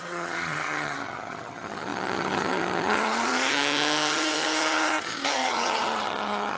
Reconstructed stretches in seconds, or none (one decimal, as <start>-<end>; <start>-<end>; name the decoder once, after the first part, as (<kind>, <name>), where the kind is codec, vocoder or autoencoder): 0.0-6.6 (vocoder, HiFi-GAN)